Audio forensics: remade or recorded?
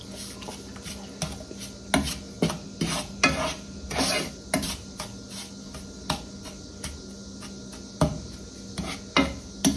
recorded